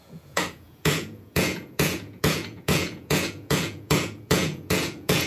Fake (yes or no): yes